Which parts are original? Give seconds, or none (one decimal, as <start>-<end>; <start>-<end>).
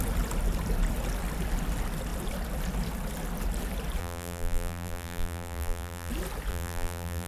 0.0-4.0; 6.1-6.5